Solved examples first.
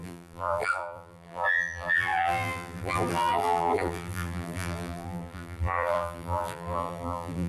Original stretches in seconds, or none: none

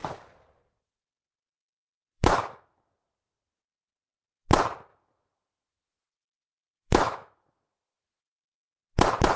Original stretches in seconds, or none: 0.0-1.6; 2.8-4.9; 8.7-9.4

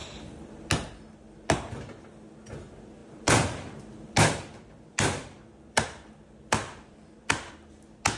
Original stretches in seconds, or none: 0.5-3.0; 7.5-8.2

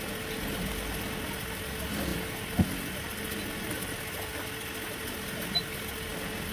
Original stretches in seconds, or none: 0.0-6.5

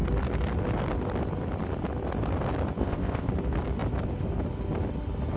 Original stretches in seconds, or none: 0.0-2.8; 3.3-5.4

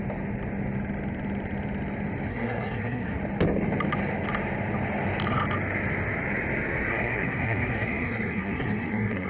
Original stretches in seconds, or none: 0.0-2.3; 3.2-6.9

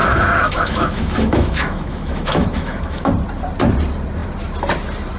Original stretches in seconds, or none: 3.1-5.2

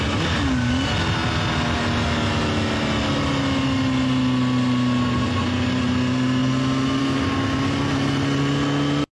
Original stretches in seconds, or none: 0.0-9.2